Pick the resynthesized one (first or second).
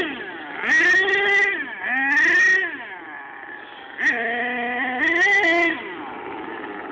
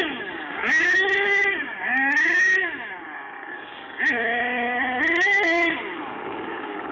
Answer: second